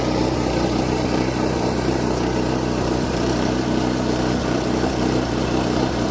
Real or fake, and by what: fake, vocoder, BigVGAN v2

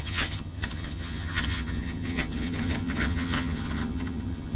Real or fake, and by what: fake, vocoder, HiFi-GAN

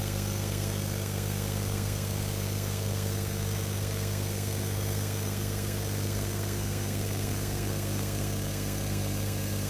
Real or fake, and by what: fake, codec, SNAC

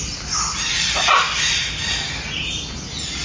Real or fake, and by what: real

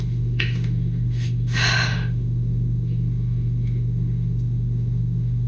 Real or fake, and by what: fake, autoencoder, DAC-VAE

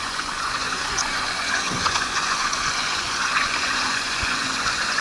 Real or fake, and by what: fake, vocoder, Vocos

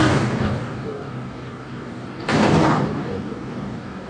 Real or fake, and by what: fake, codec, DAC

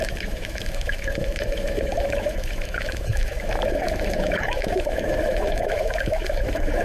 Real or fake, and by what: fake, autoencoder, DAC-VAE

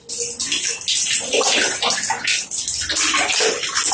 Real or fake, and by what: real